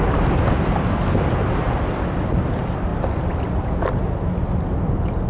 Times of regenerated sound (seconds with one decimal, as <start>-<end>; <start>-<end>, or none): none

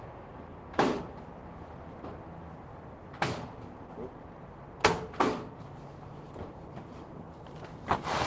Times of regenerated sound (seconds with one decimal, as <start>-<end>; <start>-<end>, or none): none

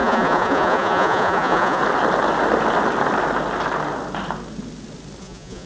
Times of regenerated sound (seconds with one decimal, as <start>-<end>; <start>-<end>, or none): 0.0-1.8; 5.2-5.7

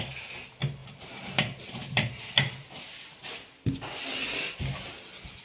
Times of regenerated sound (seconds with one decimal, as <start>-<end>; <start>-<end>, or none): none

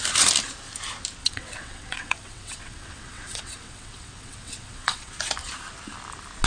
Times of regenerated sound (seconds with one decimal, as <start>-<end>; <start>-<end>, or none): 1.2-5.1

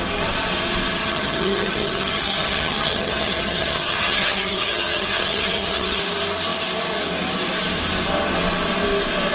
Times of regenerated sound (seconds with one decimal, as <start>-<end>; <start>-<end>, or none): 1.0-6.0

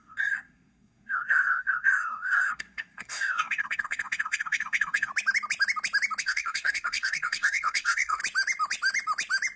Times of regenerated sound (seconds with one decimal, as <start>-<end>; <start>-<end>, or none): 0.0-5.1; 6.2-8.2